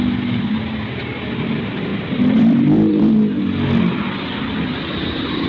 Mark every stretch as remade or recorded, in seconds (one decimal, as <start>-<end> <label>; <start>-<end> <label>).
0.0-1.9 recorded; 1.9-3.4 remade; 3.4-5.5 recorded